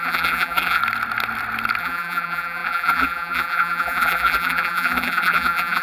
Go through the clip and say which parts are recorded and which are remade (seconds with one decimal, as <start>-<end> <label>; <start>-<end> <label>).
0.0-0.8 remade; 0.8-1.8 recorded; 1.8-5.8 remade